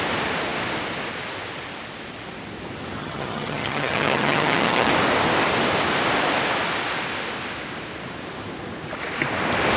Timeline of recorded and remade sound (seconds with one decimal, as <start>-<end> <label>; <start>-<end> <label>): 0.0-3.0 recorded; 3.0-4.9 remade; 4.9-9.8 recorded